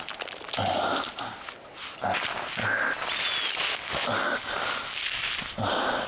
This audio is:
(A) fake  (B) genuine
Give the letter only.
B